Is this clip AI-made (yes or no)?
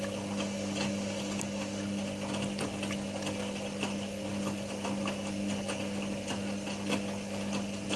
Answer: no